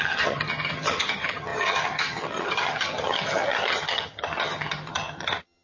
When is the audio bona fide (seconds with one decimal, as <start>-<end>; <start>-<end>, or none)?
none